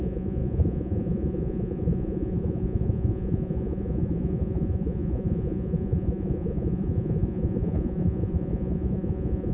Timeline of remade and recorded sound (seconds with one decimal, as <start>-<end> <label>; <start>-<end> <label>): 0.0-9.5 remade